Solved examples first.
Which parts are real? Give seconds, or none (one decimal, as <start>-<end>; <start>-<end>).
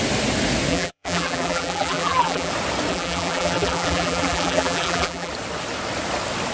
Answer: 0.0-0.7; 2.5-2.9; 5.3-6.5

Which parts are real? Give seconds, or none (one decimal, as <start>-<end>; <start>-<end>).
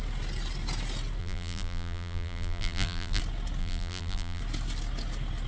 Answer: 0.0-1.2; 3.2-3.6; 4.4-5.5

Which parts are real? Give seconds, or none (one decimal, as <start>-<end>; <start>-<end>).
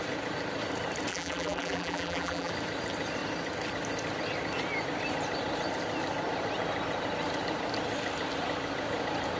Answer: 0.0-1.1; 2.5-9.4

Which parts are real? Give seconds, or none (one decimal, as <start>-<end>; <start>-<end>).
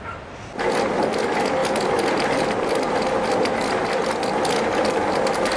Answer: 0.0-5.6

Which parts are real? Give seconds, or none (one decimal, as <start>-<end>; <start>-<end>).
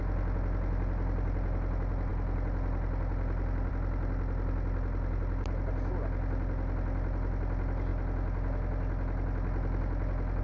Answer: 0.0-10.4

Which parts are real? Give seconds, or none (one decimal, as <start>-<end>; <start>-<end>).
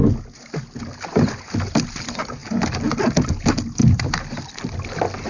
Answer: 0.0-5.3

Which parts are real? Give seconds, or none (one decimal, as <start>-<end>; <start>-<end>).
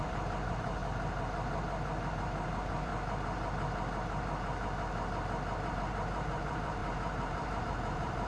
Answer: 0.8-2.1; 2.9-5.7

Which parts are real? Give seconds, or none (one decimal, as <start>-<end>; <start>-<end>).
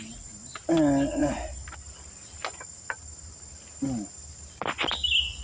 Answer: 0.0-1.2; 2.1-5.4